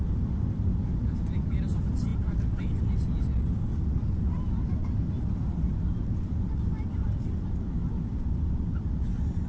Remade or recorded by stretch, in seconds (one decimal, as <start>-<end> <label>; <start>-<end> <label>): 0.0-9.5 recorded